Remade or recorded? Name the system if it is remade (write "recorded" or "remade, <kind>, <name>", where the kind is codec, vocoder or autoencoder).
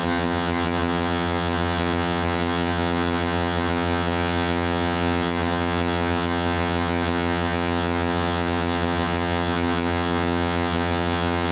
remade, vocoder, HiFi-GAN